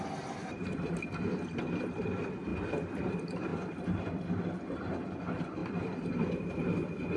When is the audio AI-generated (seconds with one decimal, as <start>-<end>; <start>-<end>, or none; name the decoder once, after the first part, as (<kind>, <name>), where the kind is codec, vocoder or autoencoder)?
2.5-3.1 (vocoder, BigVGAN v2); 3.5-4.3; 5.6-7.2